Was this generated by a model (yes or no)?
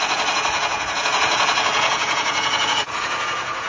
yes